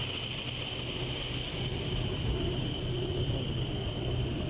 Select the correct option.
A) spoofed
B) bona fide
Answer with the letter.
B